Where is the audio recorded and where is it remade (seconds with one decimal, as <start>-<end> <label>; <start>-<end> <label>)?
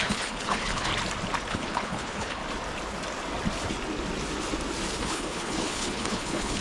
0.0-0.9 remade; 0.9-1.5 recorded; 1.5-2.4 remade; 2.4-5.0 recorded; 5.0-6.6 remade